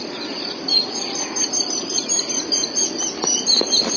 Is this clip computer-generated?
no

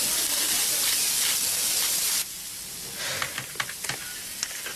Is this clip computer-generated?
no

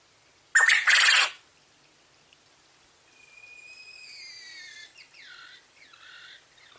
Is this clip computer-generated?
no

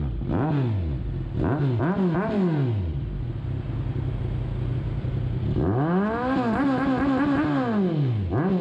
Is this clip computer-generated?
no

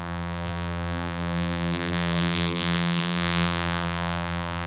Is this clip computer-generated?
yes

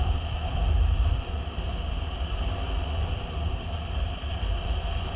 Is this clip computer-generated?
yes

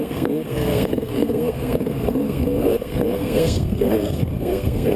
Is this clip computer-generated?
yes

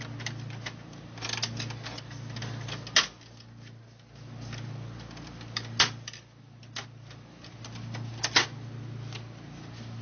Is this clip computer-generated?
no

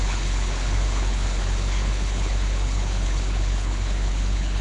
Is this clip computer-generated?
yes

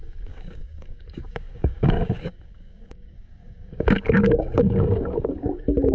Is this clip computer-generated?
yes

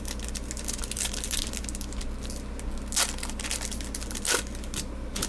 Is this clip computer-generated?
no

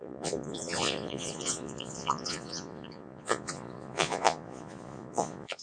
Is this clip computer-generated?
yes